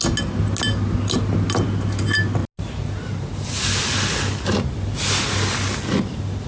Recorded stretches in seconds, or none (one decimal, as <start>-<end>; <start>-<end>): 0.0-6.5